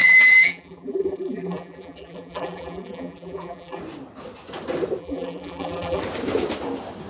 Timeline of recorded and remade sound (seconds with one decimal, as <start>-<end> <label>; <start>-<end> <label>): 0.0-3.8 remade; 3.8-5.0 recorded; 5.0-6.0 remade; 6.0-7.1 recorded

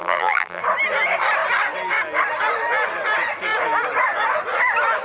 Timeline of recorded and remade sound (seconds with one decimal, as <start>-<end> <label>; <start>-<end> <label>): 0.0-0.6 remade; 0.6-5.0 recorded

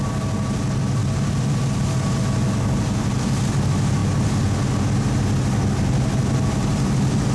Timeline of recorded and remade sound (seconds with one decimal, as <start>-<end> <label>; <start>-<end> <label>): 0.0-1.0 recorded; 1.0-1.6 remade; 1.6-7.3 recorded

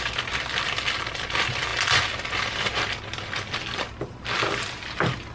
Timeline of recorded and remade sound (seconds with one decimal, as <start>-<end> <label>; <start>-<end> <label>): 0.0-5.3 recorded

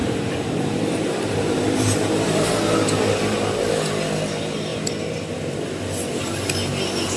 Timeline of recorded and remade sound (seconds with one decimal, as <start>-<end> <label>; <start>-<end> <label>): 0.0-3.7 remade; 3.7-7.2 recorded

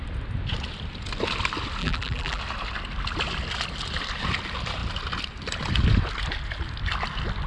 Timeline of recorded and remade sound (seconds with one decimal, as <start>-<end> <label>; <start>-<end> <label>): 0.0-1.8 recorded; 1.8-2.4 remade; 2.4-7.5 recorded